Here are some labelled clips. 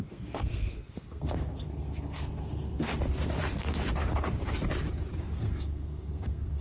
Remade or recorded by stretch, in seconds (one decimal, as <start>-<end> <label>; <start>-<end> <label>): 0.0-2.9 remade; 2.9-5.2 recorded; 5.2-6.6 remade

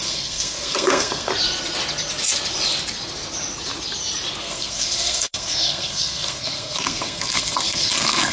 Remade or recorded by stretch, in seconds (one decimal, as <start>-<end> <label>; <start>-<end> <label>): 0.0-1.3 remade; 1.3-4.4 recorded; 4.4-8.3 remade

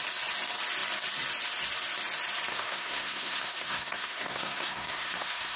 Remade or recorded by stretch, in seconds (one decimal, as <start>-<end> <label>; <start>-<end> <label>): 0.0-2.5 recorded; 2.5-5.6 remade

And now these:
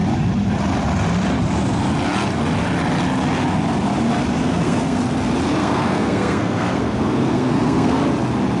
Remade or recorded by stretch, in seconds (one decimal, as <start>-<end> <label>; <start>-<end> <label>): 0.0-4.4 recorded; 4.4-5.0 remade; 5.0-5.6 recorded; 5.6-8.0 remade; 8.0-8.6 recorded